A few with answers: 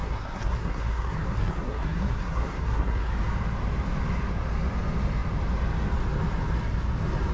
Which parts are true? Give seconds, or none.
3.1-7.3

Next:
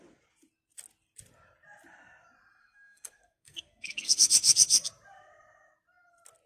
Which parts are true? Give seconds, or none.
0.0-2.6; 4.9-6.5